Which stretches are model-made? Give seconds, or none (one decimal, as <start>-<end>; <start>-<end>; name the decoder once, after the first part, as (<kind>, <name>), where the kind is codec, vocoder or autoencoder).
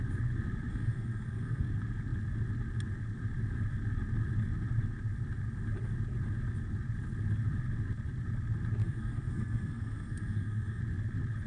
0.7-1.7 (codec, SNAC); 8.8-10.8